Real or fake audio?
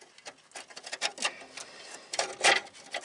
real